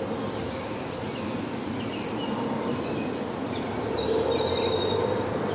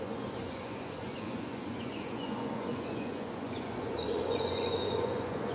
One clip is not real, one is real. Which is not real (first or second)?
second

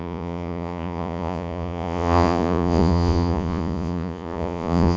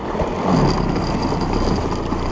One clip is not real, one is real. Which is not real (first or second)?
first